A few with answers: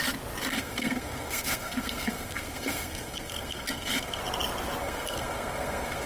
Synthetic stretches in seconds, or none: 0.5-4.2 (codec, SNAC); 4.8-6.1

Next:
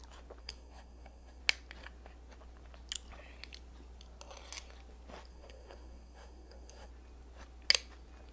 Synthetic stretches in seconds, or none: 0.4-1.4 (codec, SNAC); 5.3-6.9

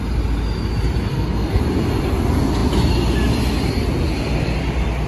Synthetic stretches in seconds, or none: 1.1-1.6 (codec, SNAC)

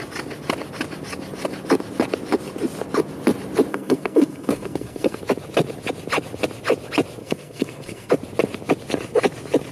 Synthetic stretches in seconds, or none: 3.7-5.2 (codec, SNAC); 7.2-8.1

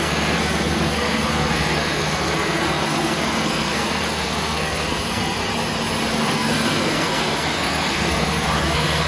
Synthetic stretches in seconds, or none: 0.0-5.4 (codec, SNAC); 6.1-9.1

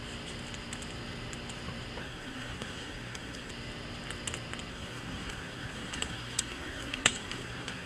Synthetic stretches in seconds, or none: 2.0-3.5 (codec, SNAC); 4.7-7.9